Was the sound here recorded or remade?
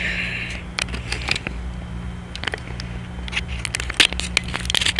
recorded